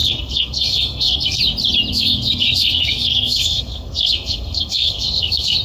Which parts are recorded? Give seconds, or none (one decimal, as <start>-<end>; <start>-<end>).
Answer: 1.4-1.9